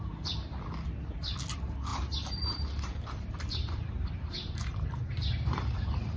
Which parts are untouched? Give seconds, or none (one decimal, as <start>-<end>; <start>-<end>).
0.0-1.9; 5.6-6.2